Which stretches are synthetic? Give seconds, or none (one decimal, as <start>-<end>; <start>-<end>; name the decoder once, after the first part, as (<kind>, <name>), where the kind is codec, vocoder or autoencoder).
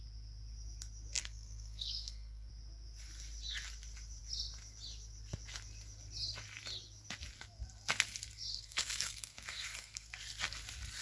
1.2-2.5 (codec, SNAC); 8.5-10.1